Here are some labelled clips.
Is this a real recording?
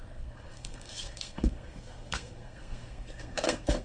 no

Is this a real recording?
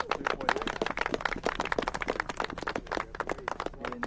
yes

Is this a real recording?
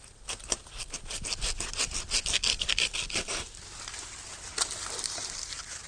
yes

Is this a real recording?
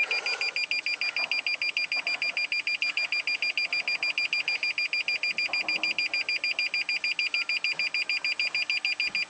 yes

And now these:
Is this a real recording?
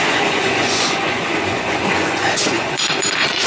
no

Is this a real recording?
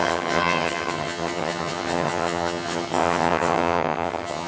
no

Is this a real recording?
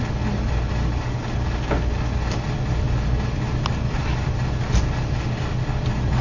yes